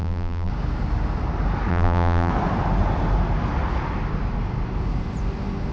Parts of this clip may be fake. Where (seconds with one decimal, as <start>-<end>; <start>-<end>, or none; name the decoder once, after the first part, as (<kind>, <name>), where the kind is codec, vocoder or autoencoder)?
0.0-0.5 (vocoder, BigVGAN v2); 1.7-2.3